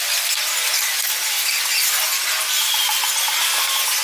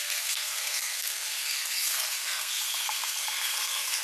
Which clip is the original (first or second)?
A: first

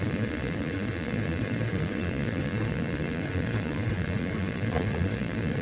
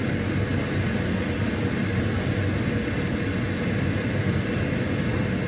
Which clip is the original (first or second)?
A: second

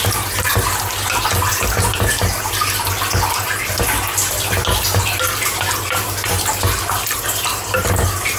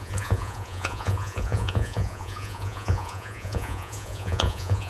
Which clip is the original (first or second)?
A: first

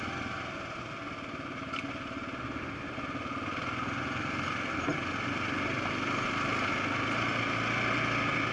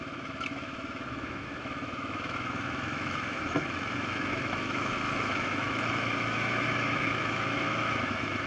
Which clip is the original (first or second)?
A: first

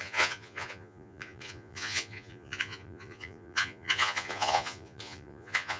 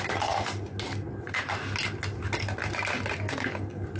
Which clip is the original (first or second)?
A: second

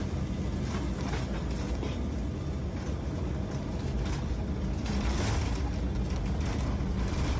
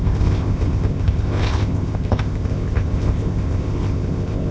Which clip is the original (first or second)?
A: first